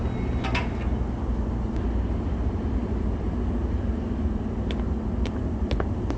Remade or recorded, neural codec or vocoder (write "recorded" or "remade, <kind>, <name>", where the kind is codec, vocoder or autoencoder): recorded